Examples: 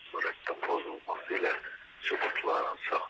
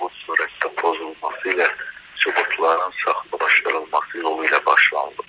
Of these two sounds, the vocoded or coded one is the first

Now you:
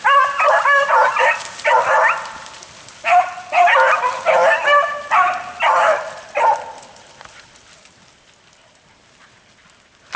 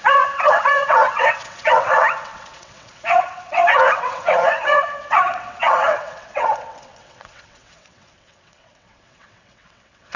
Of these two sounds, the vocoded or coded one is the second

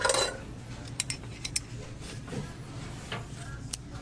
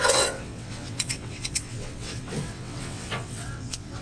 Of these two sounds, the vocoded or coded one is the second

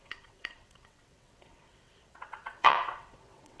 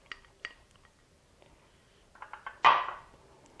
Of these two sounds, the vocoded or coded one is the first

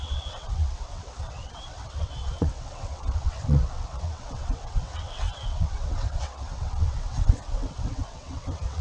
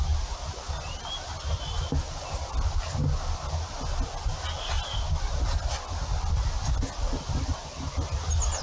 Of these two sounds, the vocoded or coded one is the first